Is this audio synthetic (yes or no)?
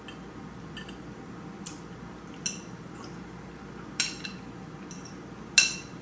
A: no